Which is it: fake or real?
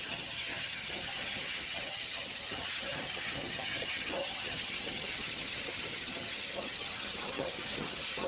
fake